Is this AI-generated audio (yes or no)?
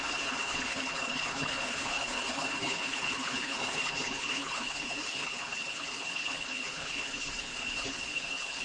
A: yes